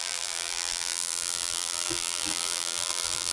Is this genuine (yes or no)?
no